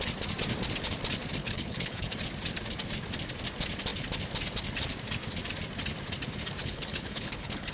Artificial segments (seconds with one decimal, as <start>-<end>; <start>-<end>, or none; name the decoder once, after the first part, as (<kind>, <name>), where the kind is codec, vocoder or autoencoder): 1.4-2.1 (codec, HILCodec); 6.6-7.7